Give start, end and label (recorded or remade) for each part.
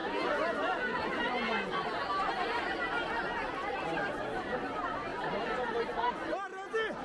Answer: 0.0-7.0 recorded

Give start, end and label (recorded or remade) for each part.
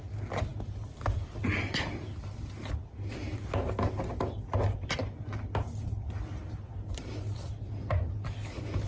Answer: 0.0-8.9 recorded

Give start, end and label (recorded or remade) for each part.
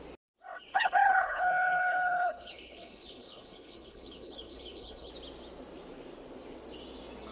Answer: 0.0-0.7 recorded; 0.7-5.1 remade; 5.1-7.3 recorded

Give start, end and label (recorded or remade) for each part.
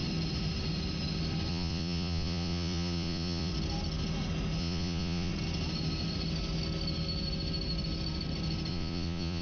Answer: 0.0-1.5 recorded; 1.5-3.5 remade; 3.5-4.6 recorded; 4.6-5.3 remade; 5.3-8.7 recorded; 8.7-9.4 remade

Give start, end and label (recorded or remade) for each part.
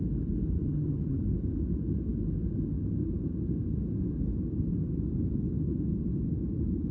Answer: 0.0-0.6 recorded; 0.6-1.2 remade; 1.2-6.9 recorded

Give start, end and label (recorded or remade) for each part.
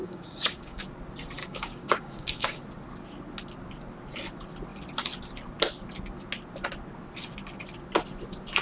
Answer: 0.0-0.8 remade; 0.8-1.4 recorded; 1.4-2.6 remade; 2.6-8.6 recorded